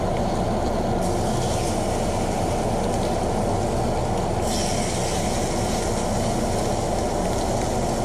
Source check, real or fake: real